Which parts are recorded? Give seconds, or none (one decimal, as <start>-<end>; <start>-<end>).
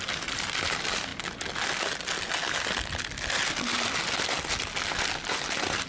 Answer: 0.0-5.9